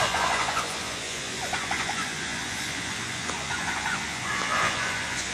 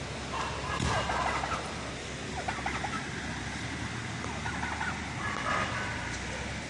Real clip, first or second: second